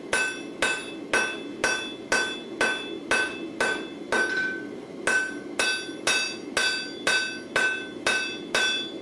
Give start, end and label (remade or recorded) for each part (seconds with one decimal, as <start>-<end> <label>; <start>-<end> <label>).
0.0-9.0 recorded